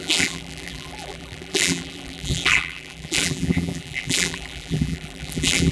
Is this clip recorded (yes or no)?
no